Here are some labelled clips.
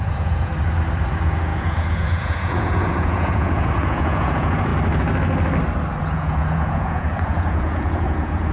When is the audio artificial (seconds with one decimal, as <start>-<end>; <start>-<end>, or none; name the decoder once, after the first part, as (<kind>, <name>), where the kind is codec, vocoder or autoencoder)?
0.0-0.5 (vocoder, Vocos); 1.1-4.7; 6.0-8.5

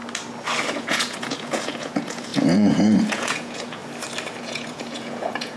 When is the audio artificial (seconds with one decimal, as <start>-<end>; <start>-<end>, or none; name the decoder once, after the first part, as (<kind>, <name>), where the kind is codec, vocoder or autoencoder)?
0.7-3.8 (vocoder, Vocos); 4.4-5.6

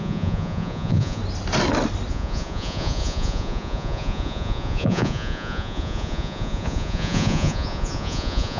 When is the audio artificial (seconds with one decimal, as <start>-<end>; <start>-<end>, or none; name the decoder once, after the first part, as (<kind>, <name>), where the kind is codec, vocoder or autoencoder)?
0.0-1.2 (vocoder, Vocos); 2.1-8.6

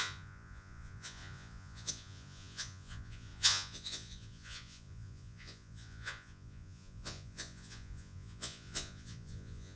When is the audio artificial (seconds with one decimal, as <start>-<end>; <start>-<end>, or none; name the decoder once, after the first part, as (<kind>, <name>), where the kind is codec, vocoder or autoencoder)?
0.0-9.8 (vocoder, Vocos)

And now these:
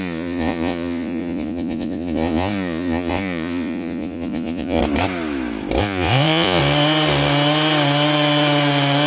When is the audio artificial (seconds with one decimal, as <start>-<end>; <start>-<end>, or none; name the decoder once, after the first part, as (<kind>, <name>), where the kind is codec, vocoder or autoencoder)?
0.0-4.8 (vocoder, Vocos); 5.8-6.6

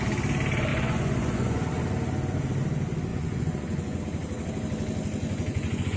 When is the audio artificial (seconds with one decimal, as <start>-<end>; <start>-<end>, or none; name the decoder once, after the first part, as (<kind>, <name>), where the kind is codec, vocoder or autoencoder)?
0.7-1.8 (vocoder, Vocos); 3.1-4.0; 5.2-6.0